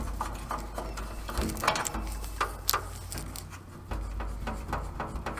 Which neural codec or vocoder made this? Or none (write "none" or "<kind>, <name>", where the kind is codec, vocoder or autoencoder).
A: none